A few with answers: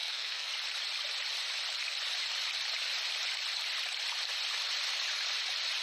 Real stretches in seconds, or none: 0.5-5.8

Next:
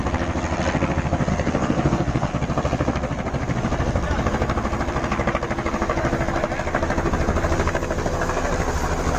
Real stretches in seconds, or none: 0.0-1.3; 2.3-9.2

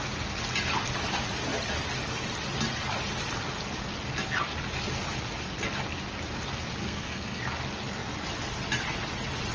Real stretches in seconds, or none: 0.0-6.8; 7.4-9.5

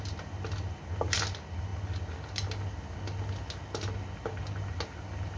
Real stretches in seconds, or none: 0.0-5.4

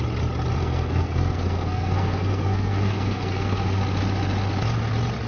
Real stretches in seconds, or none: 0.0-0.6; 3.8-5.3

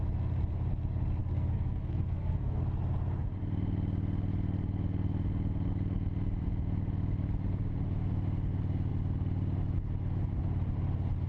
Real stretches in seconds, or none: 0.0-1.2; 2.6-11.3

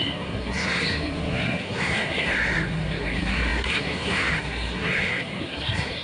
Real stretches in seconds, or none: none